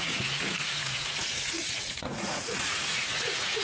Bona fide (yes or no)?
no